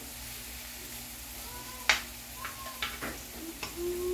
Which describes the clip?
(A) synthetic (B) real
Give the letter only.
B